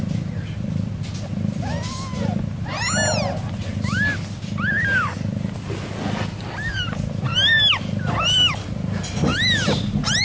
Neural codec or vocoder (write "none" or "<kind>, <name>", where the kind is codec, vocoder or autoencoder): none